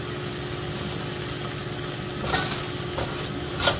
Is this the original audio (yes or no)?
yes